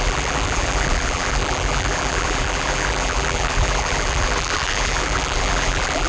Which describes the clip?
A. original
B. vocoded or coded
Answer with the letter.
B